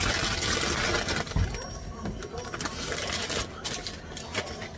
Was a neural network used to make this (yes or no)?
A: no